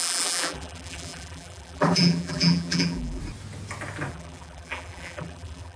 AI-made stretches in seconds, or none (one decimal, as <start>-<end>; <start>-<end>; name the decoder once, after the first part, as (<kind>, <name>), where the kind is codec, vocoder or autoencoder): 0.0-3.2 (vocoder, BigVGAN v2); 4.1-5.8